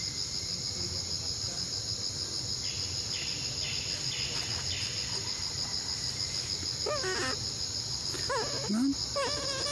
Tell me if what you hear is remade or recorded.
recorded